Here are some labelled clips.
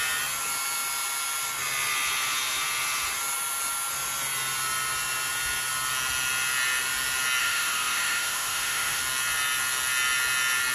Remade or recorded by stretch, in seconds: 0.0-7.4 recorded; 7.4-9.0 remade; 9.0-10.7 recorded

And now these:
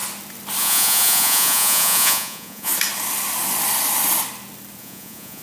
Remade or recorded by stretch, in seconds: 0.0-0.6 recorded; 0.6-2.7 remade; 2.7-4.8 recorded; 4.8-5.4 remade

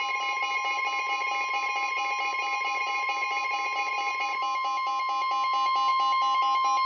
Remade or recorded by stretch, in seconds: 0.0-6.9 recorded

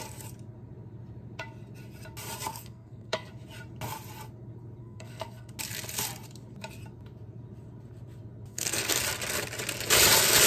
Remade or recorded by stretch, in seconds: 0.0-2.5 recorded; 2.5-3.3 remade; 3.3-4.8 recorded; 4.8-5.5 remade; 5.5-8.5 recorded; 8.5-9.0 remade; 9.0-10.5 recorded

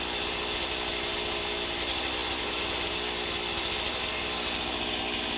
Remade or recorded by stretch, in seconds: 0.0-5.4 recorded

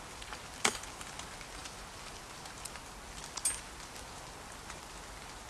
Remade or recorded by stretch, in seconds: 0.0-5.5 recorded